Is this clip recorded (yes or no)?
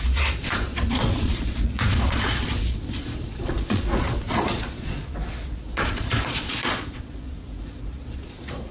no